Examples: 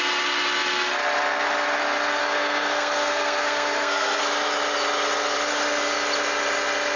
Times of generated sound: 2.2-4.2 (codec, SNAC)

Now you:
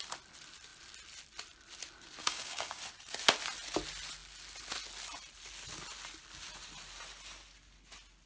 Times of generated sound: 2.2-2.8 (codec, DAC)

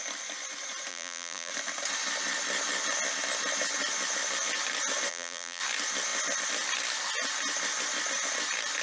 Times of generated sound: 0.9-1.5 (vocoder, BigVGAN v2); 5.1-5.6

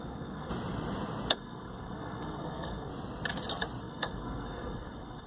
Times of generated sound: 0.0-0.5 (codec, SNAC); 1.3-2.9; 3.8-5.3

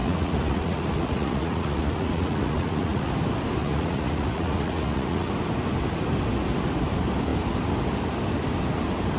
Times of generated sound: 0.0-3.1 (vocoder, Vocos); 3.6-5.3

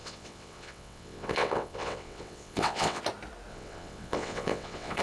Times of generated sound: 0.0-3.0 (vocoder, WaveNeXt); 3.5-5.0

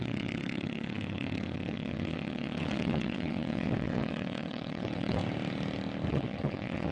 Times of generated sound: 0.0-5.2 (vocoder, WaveNeXt); 6.1-6.9